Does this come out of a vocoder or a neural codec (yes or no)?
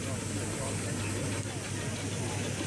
no